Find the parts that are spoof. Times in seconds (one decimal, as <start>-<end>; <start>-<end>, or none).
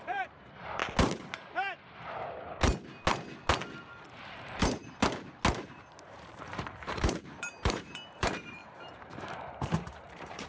0.0-0.8; 4.2-4.8; 6.0-10.5